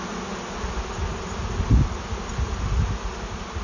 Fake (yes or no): no